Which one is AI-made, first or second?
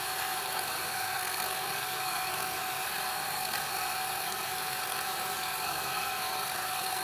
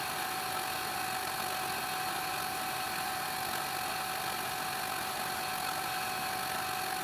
first